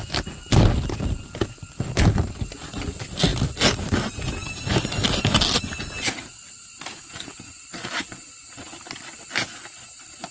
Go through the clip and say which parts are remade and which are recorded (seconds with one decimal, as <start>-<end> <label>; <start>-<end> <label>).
0.0-10.3 recorded